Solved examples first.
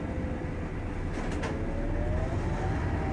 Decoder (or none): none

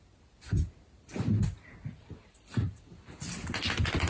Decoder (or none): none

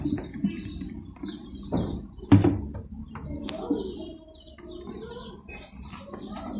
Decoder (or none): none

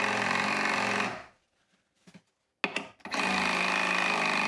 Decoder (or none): none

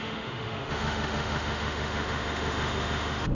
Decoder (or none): autoencoder, DAC-VAE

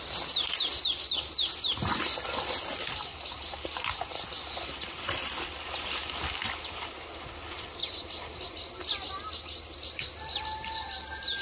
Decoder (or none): none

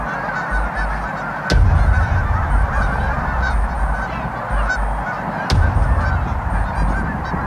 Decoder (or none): none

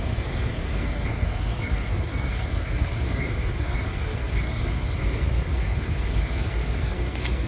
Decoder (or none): codec, SNAC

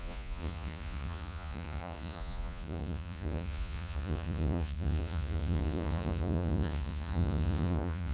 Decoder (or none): vocoder, Vocos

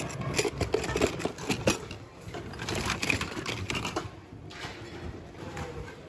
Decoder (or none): none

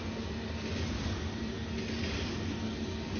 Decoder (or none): none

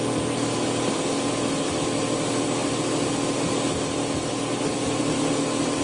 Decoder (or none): none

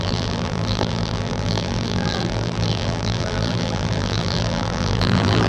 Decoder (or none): vocoder, BigVGAN v2